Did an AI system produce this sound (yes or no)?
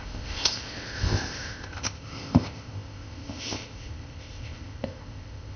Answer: yes